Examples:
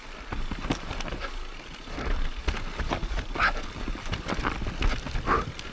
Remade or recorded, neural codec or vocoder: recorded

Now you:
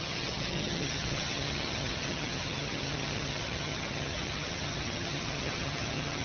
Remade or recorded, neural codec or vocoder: remade, vocoder, HiFi-GAN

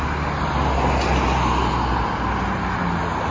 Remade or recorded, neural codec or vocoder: recorded